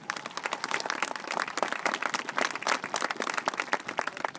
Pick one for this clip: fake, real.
real